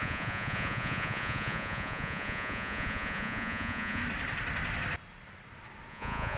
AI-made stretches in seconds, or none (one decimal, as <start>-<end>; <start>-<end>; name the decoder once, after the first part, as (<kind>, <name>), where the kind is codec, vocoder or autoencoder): 0.0-4.0 (vocoder, Vocos); 5.9-6.4